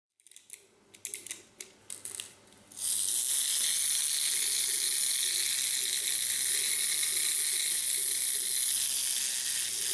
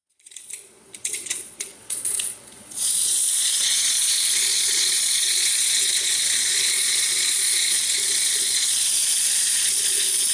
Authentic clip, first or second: first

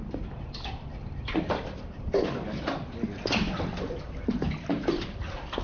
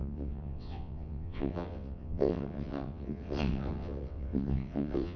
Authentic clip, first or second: first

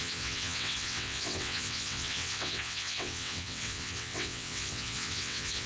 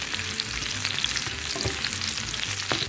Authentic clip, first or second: second